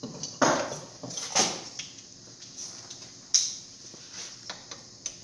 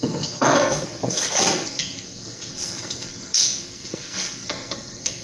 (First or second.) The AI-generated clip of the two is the second